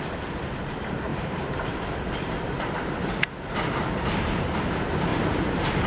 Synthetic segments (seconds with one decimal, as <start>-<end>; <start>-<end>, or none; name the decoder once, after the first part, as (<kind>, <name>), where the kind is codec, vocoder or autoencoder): 1.1-2.7 (vocoder, BigVGAN v2); 5.1-5.9